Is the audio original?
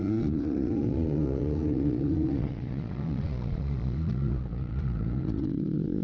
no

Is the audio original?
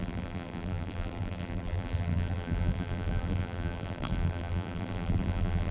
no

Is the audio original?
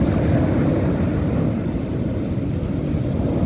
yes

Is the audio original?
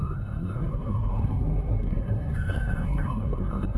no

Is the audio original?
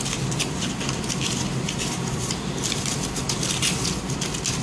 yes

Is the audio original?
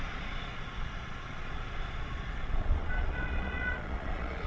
no